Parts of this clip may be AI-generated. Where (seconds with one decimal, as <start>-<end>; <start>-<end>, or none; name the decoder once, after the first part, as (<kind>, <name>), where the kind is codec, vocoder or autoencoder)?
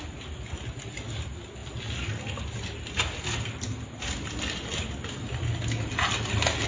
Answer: none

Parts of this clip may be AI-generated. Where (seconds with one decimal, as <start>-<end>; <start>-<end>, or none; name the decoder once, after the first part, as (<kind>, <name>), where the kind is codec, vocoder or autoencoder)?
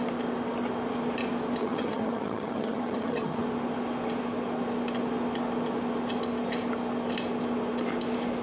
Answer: 1.6-3.4 (vocoder, HiFi-GAN)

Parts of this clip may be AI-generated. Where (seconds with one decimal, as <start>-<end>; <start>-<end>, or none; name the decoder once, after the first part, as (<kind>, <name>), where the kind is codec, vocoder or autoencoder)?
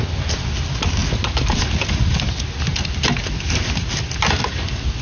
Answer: none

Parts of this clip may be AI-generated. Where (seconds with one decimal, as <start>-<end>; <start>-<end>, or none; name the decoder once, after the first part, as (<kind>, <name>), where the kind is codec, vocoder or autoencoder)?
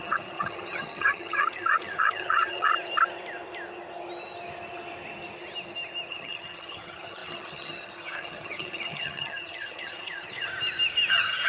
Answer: 0.0-2.7 (vocoder, HiFi-GAN); 6.1-10.5; 11.1-11.5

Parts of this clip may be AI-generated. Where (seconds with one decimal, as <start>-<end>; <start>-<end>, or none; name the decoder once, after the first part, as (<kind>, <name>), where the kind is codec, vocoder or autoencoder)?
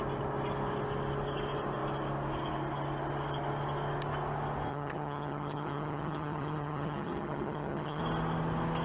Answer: 4.7-8.0 (vocoder, HiFi-GAN)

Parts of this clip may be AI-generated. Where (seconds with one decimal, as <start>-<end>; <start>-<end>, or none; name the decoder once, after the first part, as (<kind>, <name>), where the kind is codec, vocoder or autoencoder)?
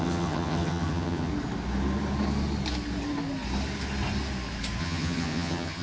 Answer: 0.0-1.3 (vocoder, HiFi-GAN); 4.8-5.8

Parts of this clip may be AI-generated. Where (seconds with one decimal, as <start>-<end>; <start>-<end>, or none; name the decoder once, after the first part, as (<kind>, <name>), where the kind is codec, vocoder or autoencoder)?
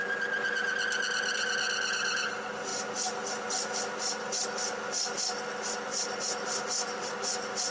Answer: none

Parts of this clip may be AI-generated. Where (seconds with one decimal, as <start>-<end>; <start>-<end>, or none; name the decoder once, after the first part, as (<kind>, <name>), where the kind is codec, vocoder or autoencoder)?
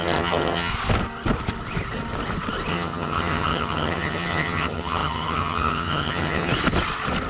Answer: 0.0-0.7 (vocoder, HiFi-GAN); 2.7-6.5